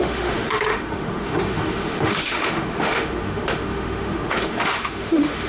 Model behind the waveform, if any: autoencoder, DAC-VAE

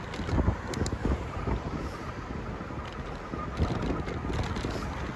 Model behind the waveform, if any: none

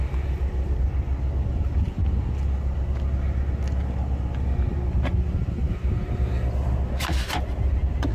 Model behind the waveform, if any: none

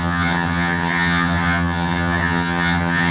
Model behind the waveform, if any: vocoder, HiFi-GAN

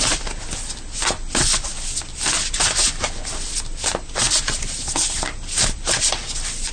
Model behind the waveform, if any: none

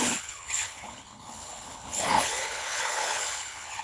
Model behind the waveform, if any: codec, HILCodec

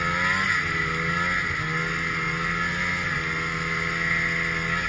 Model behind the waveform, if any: none